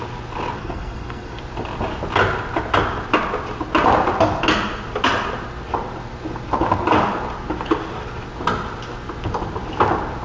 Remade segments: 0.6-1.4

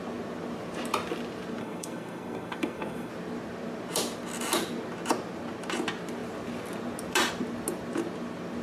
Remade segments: 1.6-3.1

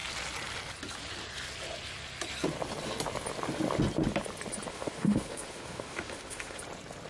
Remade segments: 4.7-6.6